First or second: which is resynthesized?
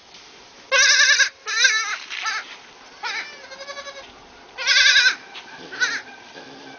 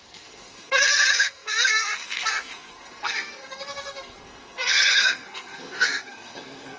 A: second